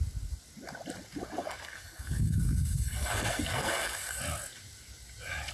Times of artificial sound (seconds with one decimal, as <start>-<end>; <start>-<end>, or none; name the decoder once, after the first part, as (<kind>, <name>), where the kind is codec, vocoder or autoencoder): 1.4-4.2 (codec, SNAC)